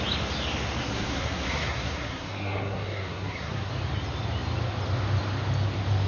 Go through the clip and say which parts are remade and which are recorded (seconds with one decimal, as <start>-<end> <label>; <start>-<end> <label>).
0.0-0.8 recorded; 0.8-3.7 remade; 3.7-6.1 recorded